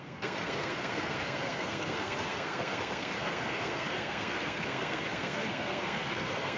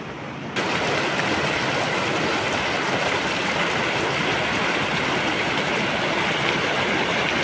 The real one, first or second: second